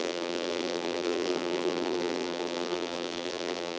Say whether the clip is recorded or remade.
remade